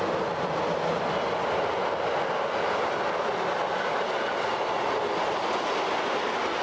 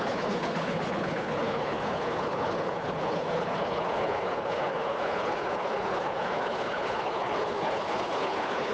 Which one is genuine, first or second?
first